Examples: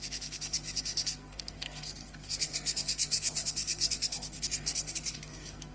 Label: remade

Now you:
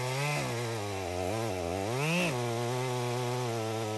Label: recorded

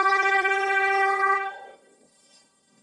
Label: remade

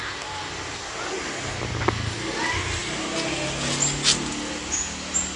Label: recorded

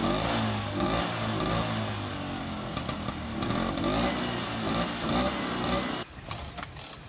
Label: recorded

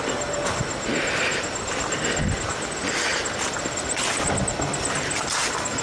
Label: recorded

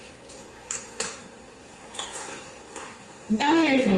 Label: remade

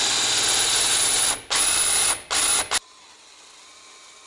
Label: recorded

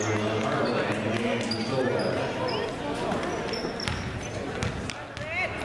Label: recorded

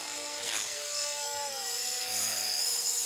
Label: remade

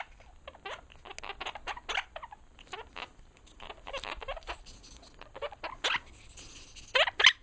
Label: recorded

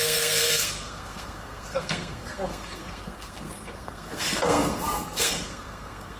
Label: remade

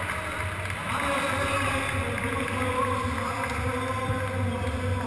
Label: recorded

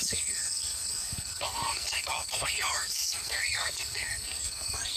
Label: remade